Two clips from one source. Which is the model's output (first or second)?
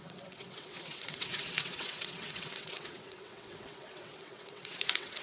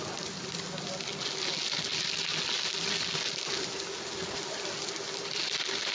first